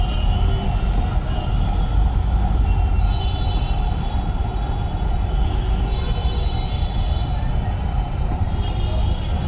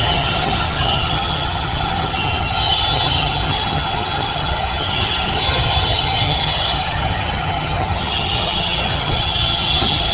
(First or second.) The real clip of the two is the first